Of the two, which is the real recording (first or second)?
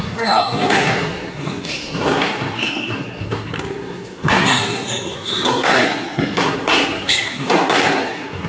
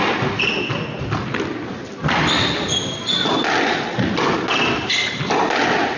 second